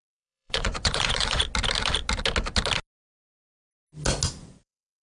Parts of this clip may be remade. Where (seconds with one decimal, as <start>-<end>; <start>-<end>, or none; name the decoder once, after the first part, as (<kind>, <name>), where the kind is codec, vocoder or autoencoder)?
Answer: 0.0-1.4 (vocoder, Vocos); 4.4-5.0